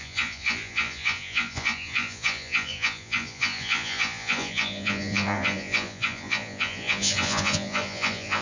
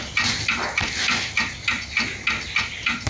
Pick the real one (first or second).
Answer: second